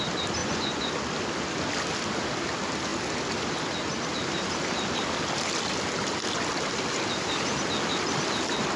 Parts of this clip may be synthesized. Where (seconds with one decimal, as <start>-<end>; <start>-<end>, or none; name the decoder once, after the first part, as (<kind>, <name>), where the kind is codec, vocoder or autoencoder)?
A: 0.4-0.9 (vocoder, Vocos)